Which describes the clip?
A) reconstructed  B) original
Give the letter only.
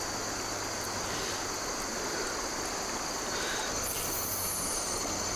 B